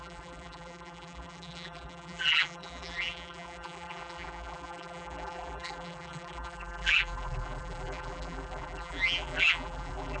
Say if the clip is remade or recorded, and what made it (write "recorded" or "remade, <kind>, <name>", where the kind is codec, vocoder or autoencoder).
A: remade, vocoder, BigVGAN v2